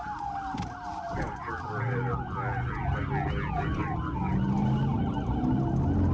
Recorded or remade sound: recorded